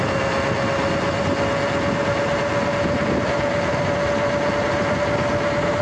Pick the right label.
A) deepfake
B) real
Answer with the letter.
B